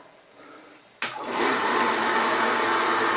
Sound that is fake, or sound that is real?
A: real